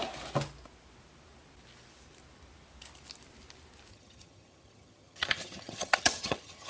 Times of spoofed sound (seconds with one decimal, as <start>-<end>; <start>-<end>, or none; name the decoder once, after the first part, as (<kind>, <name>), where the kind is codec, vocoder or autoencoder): 3.9-6.7 (vocoder, HiFi-GAN)